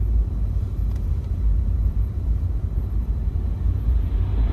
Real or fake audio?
fake